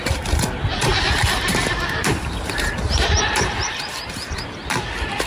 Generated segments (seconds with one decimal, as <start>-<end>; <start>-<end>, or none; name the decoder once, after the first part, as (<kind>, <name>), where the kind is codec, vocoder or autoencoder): 0.7-3.9 (vocoder, BigVGAN v2)